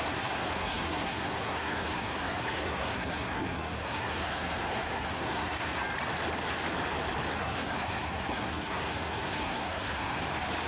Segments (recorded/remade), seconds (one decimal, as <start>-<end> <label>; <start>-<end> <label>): 0.0-5.8 remade; 5.8-7.4 recorded; 7.4-10.2 remade; 10.2-10.7 recorded